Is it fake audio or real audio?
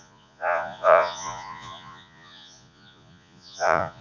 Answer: fake